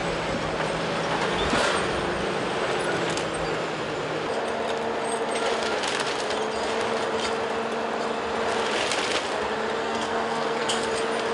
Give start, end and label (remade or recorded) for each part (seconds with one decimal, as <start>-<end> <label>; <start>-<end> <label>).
0.0-9.8 recorded; 9.8-10.9 remade; 10.9-11.3 recorded